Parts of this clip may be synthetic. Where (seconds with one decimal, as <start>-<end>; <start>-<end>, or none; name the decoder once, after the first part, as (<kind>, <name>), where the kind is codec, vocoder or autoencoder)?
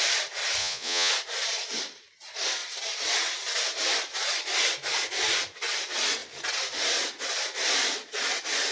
0.6-1.1 (vocoder, Vocos)